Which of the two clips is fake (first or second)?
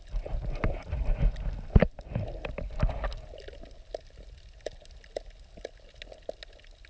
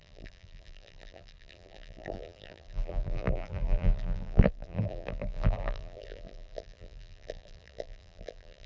second